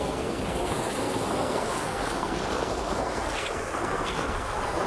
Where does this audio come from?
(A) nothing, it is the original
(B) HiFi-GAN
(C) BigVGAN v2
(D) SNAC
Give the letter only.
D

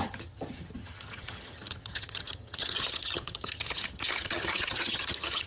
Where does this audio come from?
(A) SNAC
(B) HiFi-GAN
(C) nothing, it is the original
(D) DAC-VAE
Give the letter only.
B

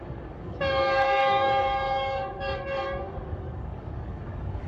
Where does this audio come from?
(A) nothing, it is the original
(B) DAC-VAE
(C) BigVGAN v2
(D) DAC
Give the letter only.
D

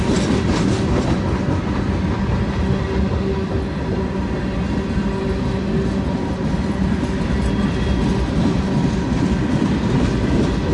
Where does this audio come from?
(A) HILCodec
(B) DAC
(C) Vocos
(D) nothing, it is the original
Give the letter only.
D